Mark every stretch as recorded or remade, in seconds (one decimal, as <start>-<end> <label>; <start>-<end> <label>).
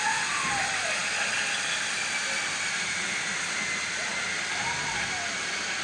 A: 0.0-5.8 recorded